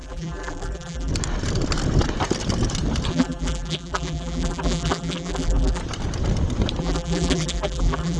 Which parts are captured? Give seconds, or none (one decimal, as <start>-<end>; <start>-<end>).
1.1-3.1; 5.8-6.8